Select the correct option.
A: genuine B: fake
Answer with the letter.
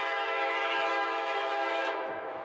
B